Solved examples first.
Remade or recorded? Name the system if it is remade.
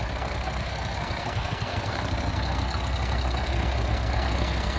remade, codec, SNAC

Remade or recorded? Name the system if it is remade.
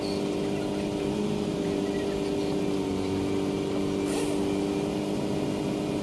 recorded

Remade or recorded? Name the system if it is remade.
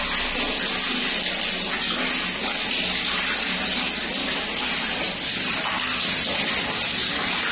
recorded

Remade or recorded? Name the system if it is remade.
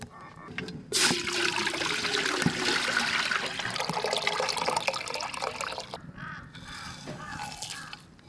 recorded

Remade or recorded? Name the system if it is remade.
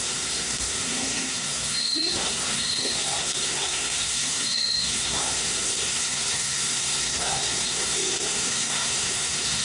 remade, codec, SNAC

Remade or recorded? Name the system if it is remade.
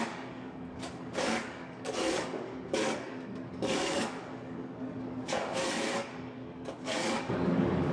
remade, codec, DAC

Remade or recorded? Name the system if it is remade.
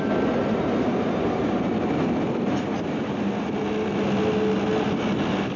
recorded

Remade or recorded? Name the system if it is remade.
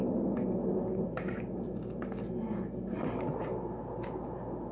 recorded